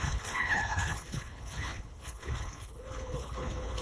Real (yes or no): no